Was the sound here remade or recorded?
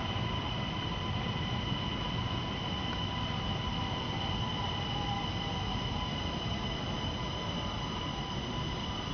recorded